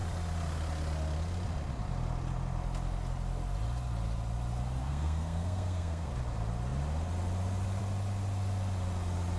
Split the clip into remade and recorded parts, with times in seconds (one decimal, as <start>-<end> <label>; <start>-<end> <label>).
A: 0.0-4.8 recorded; 4.8-6.1 remade; 6.1-9.4 recorded